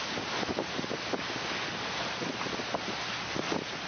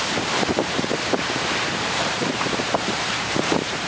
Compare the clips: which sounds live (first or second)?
first